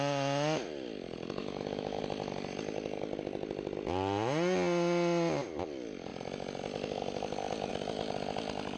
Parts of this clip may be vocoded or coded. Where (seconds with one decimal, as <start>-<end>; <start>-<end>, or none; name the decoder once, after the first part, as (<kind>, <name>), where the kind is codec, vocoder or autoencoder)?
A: 1.4-2.0 (autoencoder, DAC-VAE)